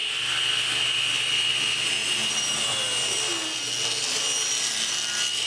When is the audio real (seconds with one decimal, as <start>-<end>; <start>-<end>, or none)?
0.0-2.0; 2.7-5.5